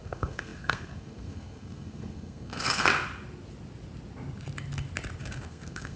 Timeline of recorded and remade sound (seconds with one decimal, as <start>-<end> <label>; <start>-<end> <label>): 0.0-2.9 remade; 2.9-5.2 recorded; 5.2-6.0 remade